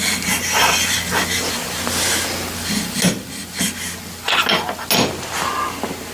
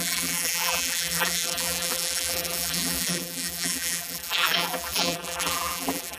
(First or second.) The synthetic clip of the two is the second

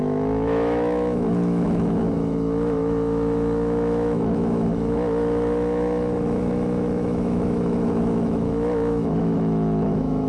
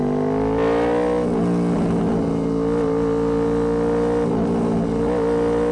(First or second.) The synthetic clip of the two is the first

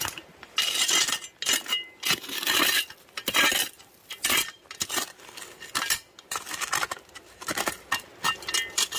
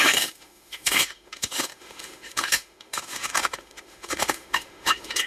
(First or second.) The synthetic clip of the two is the second